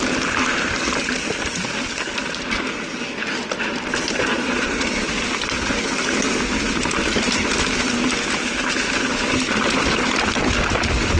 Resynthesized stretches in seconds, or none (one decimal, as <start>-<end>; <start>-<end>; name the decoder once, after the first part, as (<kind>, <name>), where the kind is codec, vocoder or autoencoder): 4.3-5.2 (vocoder, Vocos)